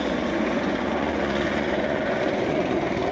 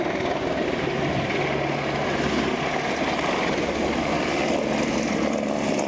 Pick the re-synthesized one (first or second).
first